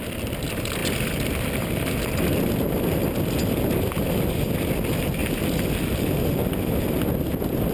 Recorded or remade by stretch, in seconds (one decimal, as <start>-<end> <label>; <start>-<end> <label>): 0.0-7.7 recorded